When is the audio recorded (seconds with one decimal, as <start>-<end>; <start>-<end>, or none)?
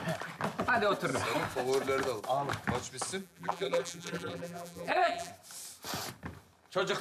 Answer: 0.0-3.2; 5.3-7.0